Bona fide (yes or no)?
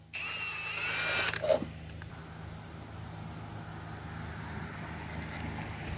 yes